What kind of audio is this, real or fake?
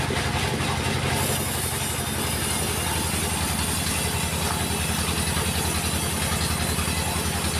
real